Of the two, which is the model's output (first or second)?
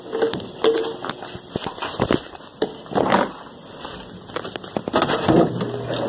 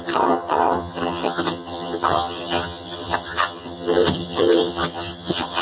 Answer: second